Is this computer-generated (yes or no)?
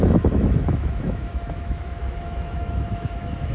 yes